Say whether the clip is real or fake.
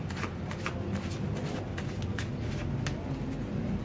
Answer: real